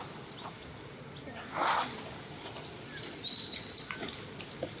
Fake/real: real